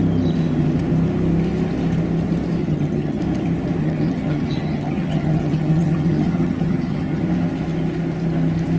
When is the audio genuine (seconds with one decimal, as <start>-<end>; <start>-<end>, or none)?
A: 0.0-2.6; 3.2-3.8; 7.2-8.8